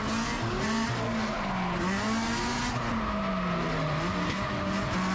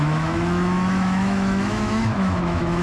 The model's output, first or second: second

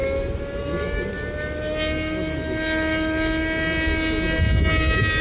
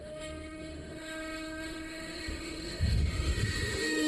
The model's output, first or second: second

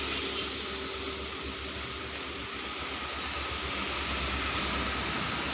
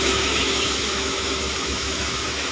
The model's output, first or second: second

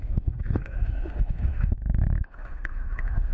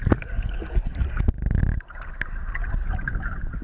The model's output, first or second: first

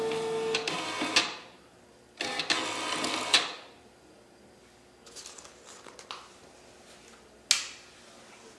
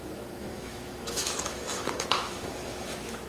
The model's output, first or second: second